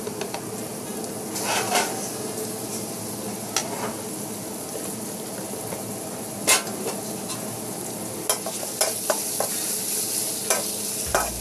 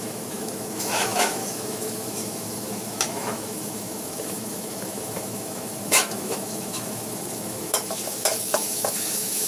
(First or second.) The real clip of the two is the first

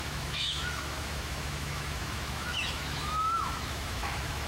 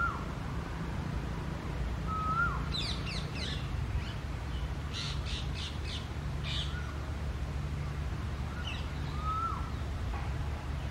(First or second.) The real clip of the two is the second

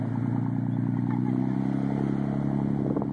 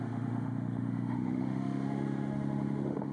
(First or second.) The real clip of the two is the first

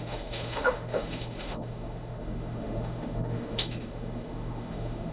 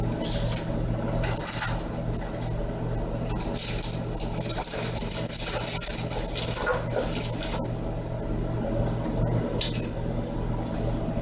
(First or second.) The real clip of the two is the second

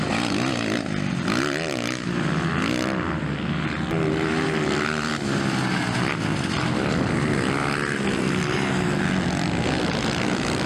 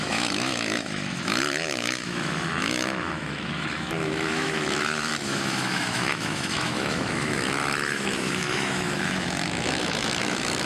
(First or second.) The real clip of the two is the first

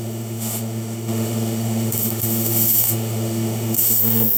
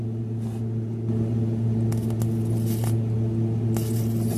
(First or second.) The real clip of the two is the second